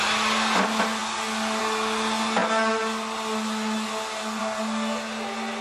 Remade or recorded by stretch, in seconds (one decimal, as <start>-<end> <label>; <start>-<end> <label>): 0.0-5.6 recorded